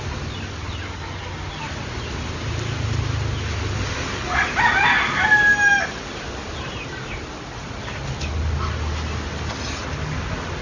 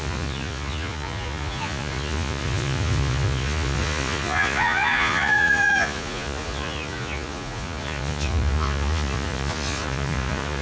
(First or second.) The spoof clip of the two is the second